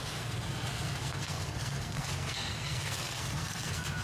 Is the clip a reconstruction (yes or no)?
yes